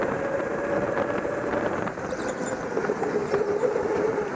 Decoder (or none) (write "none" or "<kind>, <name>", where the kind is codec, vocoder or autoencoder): none